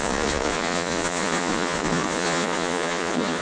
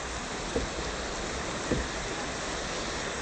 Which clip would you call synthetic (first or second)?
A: first